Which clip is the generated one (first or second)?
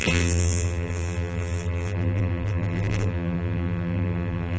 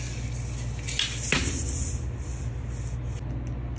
first